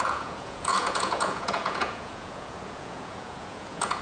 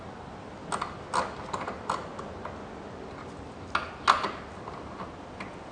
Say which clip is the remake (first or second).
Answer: first